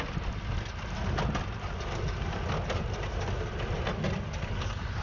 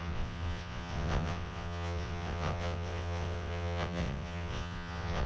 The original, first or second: first